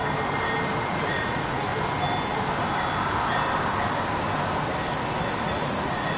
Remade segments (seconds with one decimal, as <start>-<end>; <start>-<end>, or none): 0.8-1.7; 5.4-6.2